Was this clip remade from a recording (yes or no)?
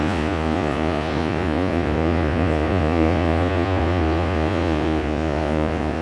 yes